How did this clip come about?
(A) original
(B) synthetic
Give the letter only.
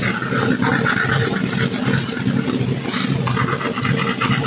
A